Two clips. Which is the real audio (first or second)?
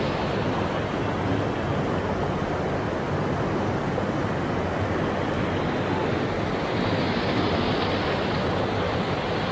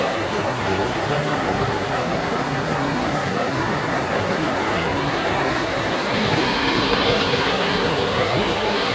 first